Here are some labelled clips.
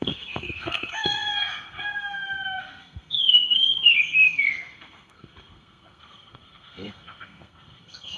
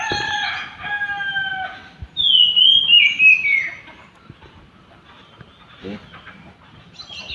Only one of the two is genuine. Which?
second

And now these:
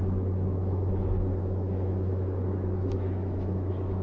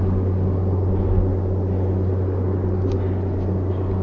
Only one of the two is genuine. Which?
second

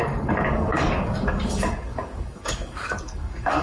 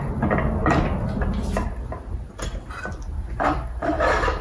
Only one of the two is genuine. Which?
second